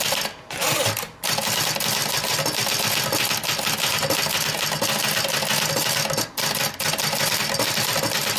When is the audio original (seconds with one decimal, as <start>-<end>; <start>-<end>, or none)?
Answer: 0.0-8.4